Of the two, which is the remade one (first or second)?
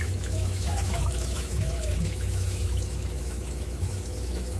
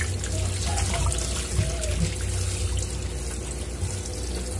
first